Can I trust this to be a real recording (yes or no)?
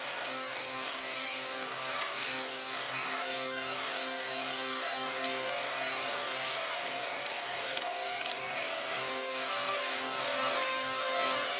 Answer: no